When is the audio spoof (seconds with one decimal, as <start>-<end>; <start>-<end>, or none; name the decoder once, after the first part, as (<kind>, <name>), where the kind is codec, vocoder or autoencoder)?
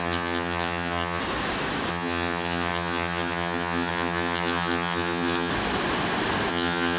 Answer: 0.0-1.2 (vocoder, HiFi-GAN); 1.9-5.5; 6.5-7.0